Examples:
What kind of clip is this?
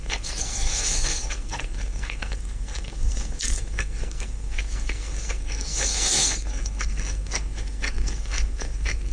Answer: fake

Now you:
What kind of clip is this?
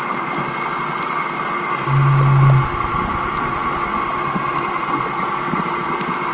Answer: real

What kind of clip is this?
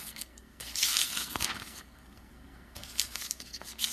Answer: fake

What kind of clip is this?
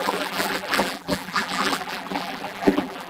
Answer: fake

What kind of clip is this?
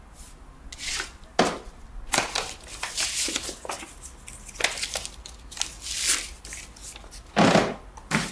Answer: real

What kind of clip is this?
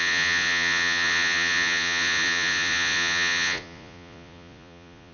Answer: fake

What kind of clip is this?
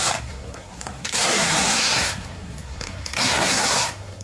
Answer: fake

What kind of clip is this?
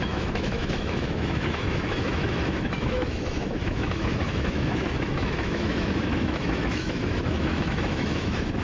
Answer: fake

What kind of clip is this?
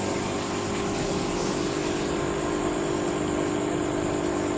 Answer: real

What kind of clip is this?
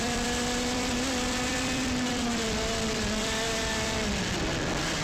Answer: fake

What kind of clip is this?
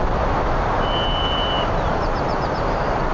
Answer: real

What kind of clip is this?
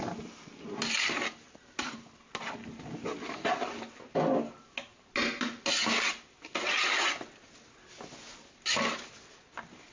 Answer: real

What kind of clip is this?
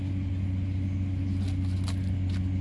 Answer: real